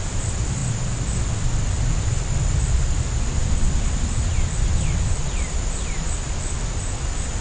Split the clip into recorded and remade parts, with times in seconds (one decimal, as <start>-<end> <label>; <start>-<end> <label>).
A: 0.0-7.4 recorded